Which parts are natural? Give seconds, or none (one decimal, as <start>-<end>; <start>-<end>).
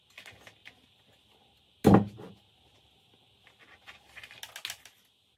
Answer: 0.0-5.4